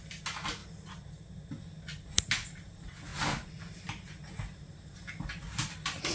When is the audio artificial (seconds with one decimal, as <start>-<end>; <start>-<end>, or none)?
none